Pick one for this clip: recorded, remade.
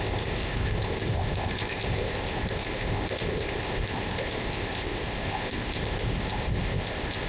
remade